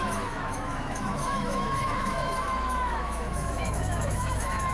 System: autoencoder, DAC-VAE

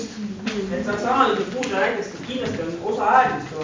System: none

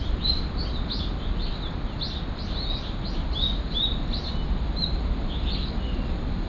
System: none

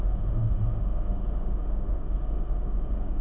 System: autoencoder, DAC-VAE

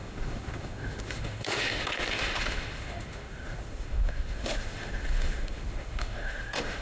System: autoencoder, DAC-VAE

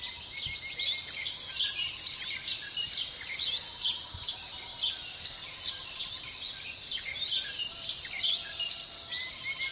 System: none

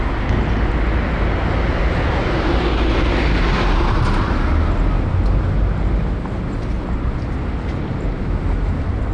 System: none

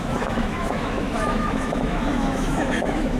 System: autoencoder, DAC-VAE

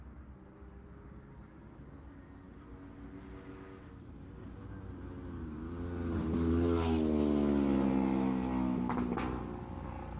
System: none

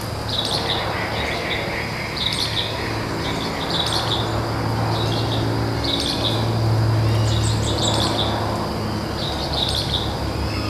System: none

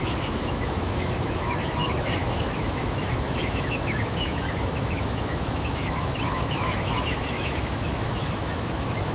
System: autoencoder, DAC-VAE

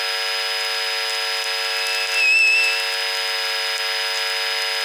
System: none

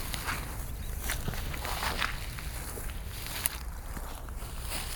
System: none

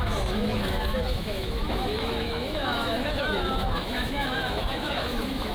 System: autoencoder, DAC-VAE